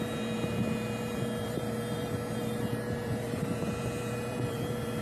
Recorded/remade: remade